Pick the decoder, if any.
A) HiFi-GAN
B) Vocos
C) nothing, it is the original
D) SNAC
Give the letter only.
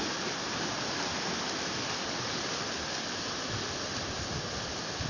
C